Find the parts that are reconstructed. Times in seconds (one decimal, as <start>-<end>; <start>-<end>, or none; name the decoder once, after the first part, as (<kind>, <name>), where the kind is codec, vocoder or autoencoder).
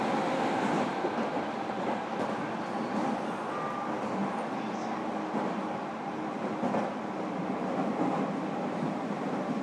none